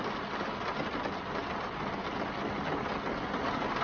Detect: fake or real real